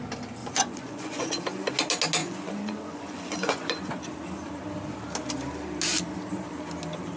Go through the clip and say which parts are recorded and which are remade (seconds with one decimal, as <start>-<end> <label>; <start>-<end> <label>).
0.0-0.4 recorded; 0.4-1.2 remade; 1.2-2.2 recorded; 2.2-4.0 remade; 4.0-7.2 recorded